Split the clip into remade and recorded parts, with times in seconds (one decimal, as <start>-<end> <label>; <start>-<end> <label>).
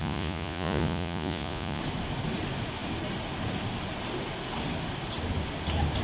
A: 0.0-1.8 remade; 1.8-6.0 recorded